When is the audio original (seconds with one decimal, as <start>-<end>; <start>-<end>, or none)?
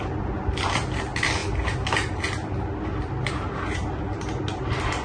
0.0-5.0